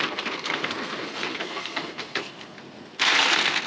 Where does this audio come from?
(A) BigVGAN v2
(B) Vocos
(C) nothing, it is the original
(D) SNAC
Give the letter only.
D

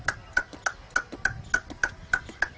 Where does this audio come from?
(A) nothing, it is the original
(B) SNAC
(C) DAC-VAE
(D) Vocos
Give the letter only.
A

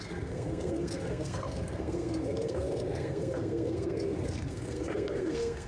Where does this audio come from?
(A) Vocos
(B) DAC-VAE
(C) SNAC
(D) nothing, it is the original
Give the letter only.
C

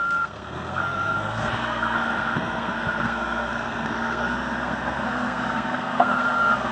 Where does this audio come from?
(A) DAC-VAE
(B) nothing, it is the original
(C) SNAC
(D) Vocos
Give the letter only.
C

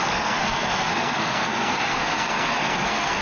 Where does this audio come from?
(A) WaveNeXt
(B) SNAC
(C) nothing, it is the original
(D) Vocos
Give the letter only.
B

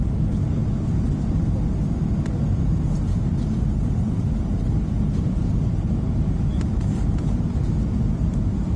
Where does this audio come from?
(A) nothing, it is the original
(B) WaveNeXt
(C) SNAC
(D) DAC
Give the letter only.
A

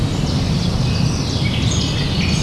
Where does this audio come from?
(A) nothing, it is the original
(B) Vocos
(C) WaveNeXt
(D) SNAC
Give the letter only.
A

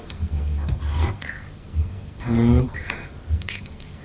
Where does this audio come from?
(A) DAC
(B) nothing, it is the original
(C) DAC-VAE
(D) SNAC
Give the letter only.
D